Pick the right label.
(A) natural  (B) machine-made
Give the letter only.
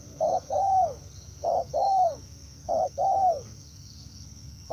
B